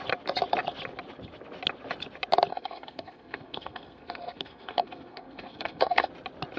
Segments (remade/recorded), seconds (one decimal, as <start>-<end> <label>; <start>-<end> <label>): 0.0-2.5 recorded; 2.5-6.1 remade; 6.1-6.6 recorded